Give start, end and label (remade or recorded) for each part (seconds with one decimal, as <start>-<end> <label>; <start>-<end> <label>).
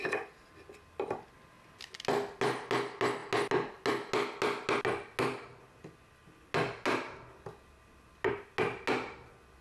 0.0-9.6 recorded